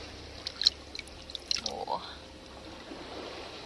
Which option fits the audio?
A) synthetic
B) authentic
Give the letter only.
B